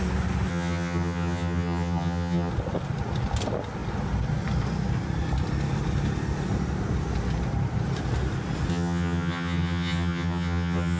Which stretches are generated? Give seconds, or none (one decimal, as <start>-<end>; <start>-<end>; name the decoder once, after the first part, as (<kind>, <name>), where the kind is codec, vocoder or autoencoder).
0.5-2.5 (vocoder, HiFi-GAN); 8.7-11.0